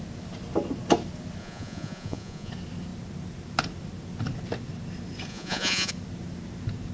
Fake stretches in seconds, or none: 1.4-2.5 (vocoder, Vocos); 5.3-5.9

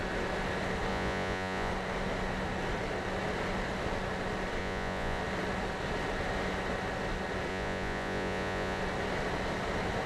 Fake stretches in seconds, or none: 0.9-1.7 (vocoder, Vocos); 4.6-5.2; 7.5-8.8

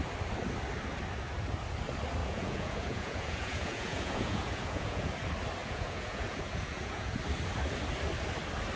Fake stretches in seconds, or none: 2.2-5.1 (vocoder, Vocos); 5.6-7.2

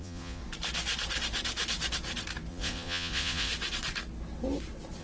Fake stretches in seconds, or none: 0.0-0.4 (vocoder, Vocos); 2.5-3.5

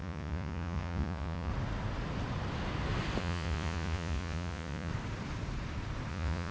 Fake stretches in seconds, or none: 0.0-1.5 (vocoder, Vocos); 3.2-4.9; 6.1-6.5